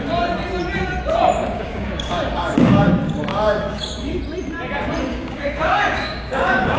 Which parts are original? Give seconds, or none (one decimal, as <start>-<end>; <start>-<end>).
0.0-1.4; 2.9-3.3; 4.2-5.1